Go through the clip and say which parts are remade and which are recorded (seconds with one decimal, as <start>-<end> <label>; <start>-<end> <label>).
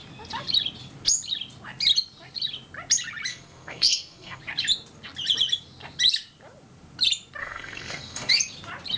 0.0-3.3 recorded; 3.3-4.4 remade; 4.4-7.4 recorded; 7.4-8.3 remade; 8.3-9.0 recorded